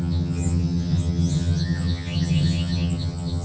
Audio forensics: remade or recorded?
remade